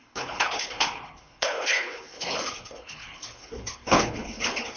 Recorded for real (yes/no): no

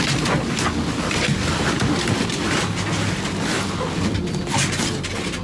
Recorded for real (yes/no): yes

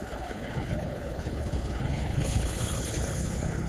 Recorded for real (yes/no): no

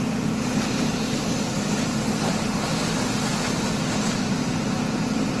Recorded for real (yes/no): yes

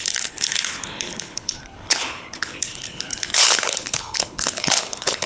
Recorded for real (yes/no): no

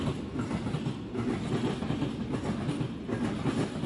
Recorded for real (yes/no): yes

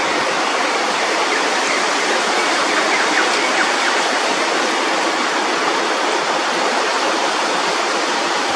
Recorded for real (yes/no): yes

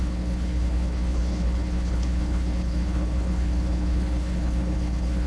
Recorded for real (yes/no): no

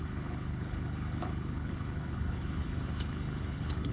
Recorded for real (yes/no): no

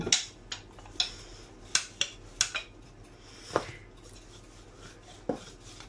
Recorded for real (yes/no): yes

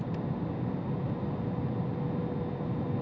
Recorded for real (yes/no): yes